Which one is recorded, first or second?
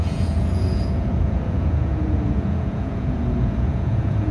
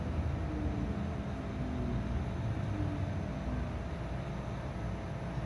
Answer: second